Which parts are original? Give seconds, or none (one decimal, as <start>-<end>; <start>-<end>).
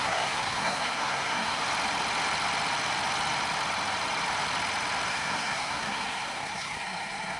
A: 1.6-5.1